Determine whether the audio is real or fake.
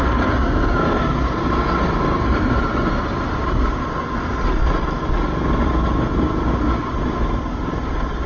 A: real